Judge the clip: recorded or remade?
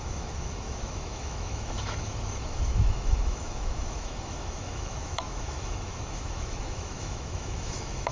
remade